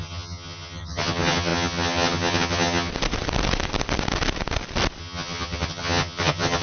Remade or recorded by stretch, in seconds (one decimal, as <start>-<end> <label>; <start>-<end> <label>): 0.0-2.9 remade; 2.9-5.0 recorded; 5.0-6.6 remade